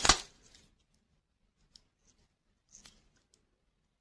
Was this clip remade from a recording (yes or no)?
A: no